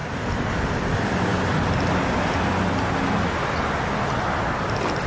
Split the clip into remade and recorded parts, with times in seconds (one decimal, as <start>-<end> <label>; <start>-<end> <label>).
0.0-5.1 recorded